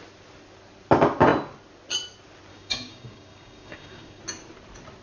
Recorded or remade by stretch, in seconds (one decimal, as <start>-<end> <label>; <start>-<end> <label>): 0.0-2.5 recorded; 2.5-4.2 remade; 4.2-5.0 recorded